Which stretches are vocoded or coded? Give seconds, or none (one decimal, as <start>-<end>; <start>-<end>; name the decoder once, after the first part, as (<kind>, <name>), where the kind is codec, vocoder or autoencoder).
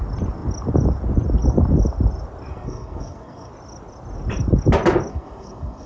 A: 2.5-3.5 (codec, SNAC); 5.1-5.9